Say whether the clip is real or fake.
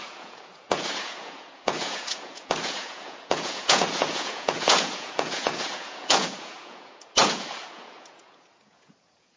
fake